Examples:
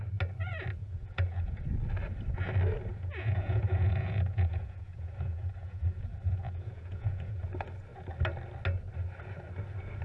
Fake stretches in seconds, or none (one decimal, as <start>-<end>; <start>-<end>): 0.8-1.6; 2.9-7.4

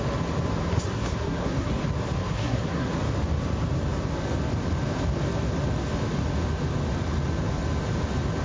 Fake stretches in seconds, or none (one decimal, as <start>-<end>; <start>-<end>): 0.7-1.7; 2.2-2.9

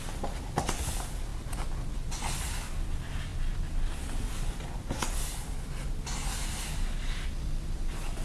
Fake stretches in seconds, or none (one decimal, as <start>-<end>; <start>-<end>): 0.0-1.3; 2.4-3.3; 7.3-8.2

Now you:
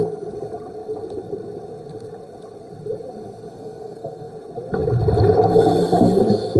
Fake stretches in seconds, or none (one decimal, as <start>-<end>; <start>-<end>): 3.5-4.3

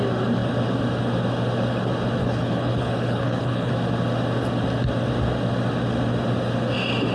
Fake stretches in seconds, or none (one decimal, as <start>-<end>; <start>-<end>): 2.2-3.7

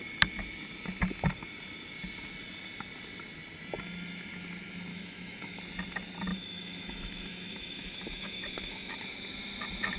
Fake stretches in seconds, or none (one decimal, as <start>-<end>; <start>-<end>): 4.9-5.6; 6.3-9.0

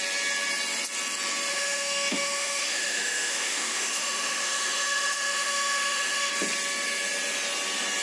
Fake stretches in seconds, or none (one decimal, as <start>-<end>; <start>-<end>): 1.5-6.3